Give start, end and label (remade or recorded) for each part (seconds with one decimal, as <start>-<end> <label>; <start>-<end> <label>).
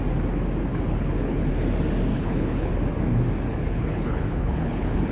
0.0-0.7 recorded; 0.7-1.5 remade; 1.5-2.1 recorded; 2.1-2.7 remade; 2.7-3.5 recorded; 3.5-5.1 remade